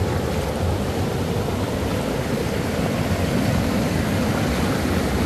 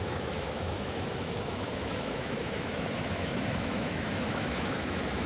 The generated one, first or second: second